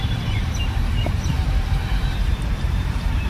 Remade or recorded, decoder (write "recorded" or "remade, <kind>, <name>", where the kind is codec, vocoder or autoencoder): remade, vocoder, BigVGAN v2